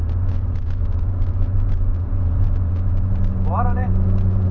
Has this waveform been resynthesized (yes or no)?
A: yes